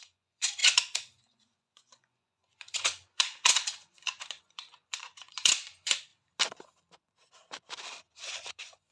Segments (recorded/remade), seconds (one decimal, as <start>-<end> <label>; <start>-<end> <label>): 0.0-6.1 remade; 6.1-8.5 recorded; 8.5-8.9 remade